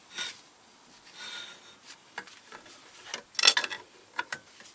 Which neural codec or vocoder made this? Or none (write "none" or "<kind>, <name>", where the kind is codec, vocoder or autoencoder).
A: none